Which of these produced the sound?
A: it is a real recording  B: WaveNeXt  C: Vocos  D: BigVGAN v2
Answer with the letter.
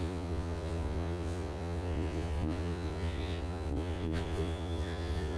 C